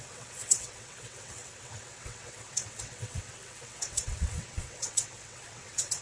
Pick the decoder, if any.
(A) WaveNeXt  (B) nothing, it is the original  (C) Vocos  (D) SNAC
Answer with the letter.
A